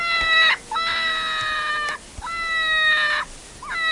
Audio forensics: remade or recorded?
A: recorded